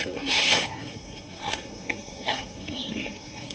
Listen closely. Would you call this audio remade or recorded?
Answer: remade